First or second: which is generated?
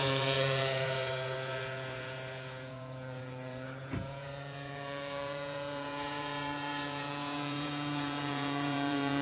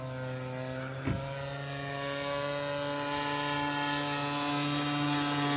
first